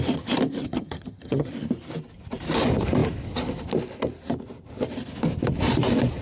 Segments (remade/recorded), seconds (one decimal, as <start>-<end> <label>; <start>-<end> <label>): 0.0-0.6 recorded; 0.6-1.5 remade; 1.5-6.2 recorded